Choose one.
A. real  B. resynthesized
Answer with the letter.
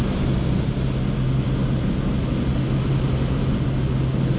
A